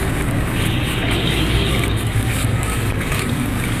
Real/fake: fake